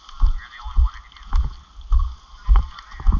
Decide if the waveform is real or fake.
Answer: real